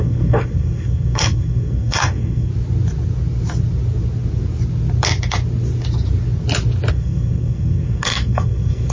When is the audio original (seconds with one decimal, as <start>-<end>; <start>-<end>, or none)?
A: 2.5-6.9